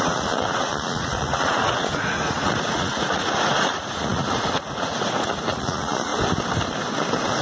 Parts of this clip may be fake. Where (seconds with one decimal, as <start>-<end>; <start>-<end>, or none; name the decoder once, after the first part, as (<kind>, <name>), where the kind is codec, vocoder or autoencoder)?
0.0-6.1 (vocoder, Vocos)